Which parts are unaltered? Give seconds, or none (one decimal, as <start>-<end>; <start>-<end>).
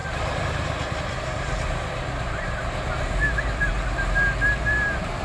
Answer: 3.7-4.7